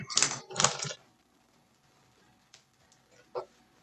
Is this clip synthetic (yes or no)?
no